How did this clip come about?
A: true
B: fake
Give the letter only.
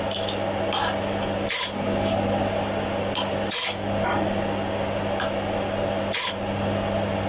A